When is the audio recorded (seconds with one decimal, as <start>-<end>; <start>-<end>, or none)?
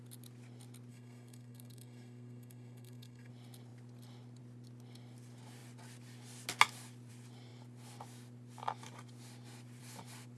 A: 0.0-0.9; 3.3-10.4